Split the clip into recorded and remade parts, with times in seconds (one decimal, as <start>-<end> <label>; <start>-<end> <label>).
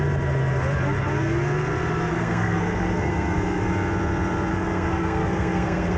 0.0-2.1 recorded; 2.1-3.7 remade; 3.7-4.5 recorded; 4.5-6.0 remade